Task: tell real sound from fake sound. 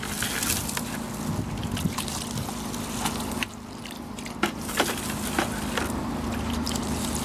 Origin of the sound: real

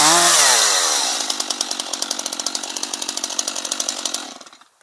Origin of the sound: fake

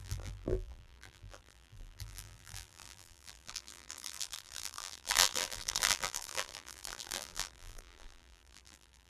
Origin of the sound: fake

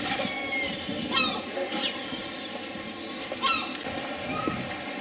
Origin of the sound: real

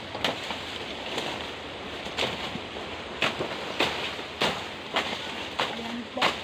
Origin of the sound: real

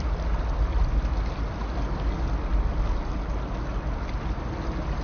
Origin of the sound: real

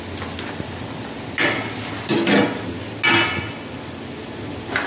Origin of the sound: real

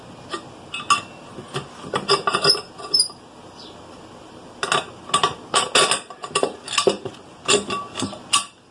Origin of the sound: real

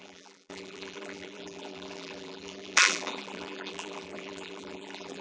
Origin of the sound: fake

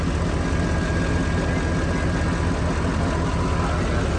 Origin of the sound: real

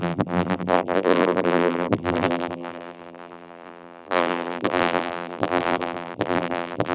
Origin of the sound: fake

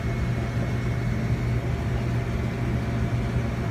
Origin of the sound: real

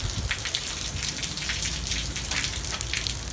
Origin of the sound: fake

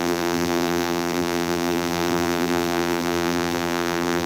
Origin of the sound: fake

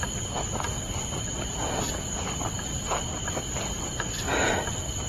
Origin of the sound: real